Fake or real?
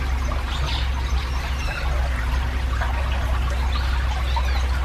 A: real